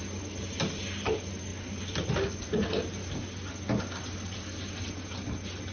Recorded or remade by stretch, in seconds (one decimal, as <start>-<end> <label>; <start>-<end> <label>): 0.0-5.7 recorded